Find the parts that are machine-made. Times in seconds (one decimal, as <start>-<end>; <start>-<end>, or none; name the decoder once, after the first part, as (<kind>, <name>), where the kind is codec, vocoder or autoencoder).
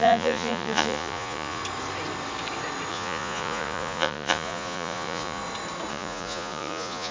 0.0-1.6 (vocoder, Vocos); 2.9-5.4; 5.9-7.1